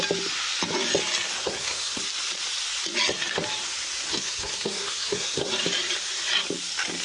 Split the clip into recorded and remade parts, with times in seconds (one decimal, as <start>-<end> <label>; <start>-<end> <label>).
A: 0.0-1.4 recorded; 1.4-2.0 remade; 2.0-4.1 recorded; 4.1-5.5 remade; 5.5-7.0 recorded